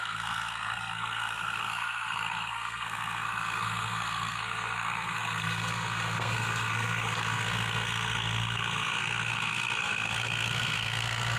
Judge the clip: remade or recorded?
remade